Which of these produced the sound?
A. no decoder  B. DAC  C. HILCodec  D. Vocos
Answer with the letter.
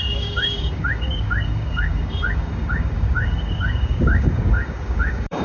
B